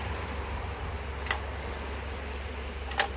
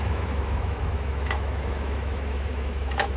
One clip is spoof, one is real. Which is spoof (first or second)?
second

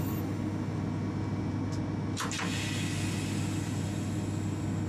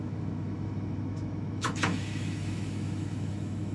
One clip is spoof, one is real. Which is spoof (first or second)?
second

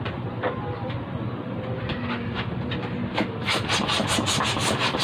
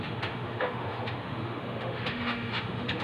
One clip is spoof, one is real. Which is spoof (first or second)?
second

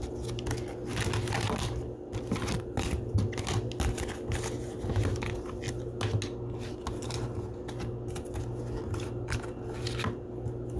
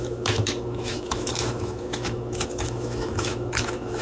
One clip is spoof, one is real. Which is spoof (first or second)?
second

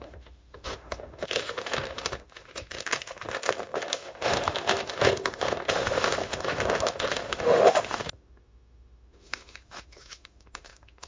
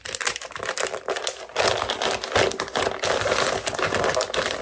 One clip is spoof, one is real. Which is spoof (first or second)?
first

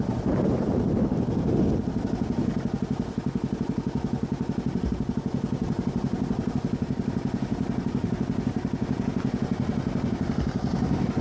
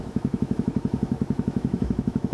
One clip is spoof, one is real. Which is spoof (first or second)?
second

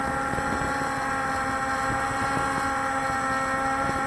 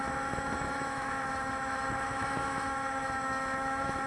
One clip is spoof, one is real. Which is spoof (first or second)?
second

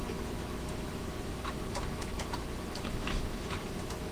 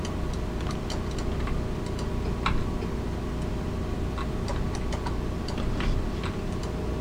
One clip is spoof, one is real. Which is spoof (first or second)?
first